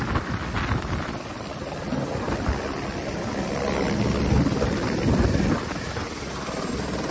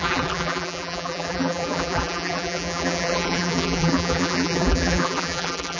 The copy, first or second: second